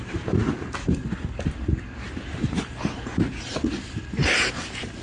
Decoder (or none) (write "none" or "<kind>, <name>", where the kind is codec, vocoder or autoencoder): none